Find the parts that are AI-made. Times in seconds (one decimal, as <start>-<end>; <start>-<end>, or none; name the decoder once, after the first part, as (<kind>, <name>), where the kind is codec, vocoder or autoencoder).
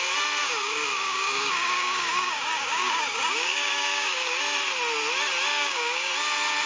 0.4-4.4 (codec, DAC); 5.5-6.1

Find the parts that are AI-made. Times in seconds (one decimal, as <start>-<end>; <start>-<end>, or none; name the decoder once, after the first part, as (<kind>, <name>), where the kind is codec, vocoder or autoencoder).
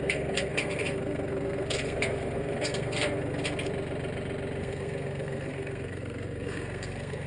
0.0-3.4 (codec, SNAC); 4.6-7.3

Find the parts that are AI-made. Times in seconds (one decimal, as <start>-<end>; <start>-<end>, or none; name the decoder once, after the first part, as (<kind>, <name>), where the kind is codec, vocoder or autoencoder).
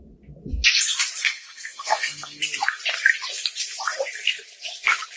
1.2-2.4 (codec, SNAC)